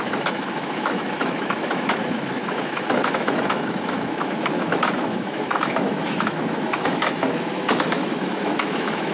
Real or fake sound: fake